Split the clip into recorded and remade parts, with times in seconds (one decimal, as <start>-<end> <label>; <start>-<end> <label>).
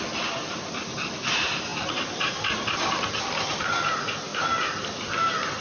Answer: 0.0-5.6 recorded